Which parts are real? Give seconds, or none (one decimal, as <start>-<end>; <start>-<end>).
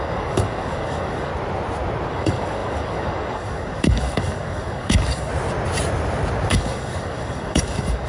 1.3-2.1; 5.3-6.5